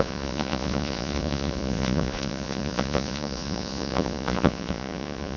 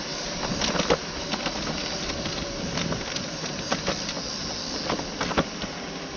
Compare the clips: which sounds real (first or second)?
second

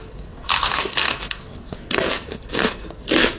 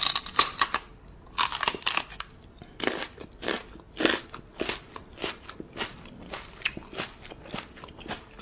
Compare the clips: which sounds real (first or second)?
second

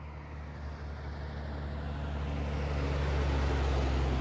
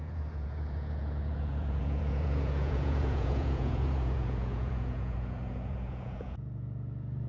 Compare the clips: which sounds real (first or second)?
first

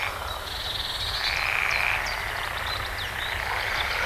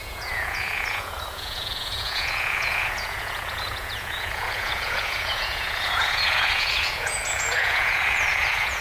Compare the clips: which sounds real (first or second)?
first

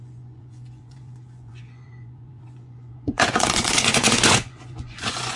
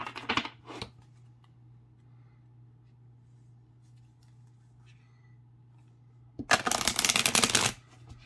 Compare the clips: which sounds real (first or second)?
second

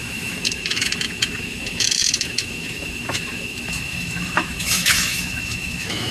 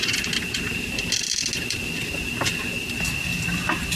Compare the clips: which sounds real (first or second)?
second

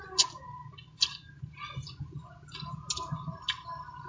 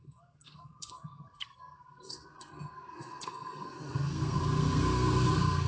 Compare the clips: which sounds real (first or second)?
first